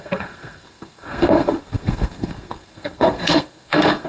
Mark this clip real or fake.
fake